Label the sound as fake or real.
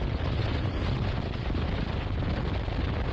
real